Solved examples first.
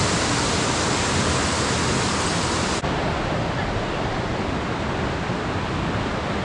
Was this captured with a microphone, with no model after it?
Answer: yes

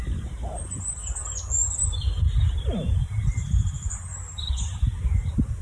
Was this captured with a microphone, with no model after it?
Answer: no